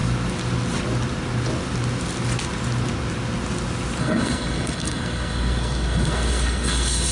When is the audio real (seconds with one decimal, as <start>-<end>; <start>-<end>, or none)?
0.0-4.0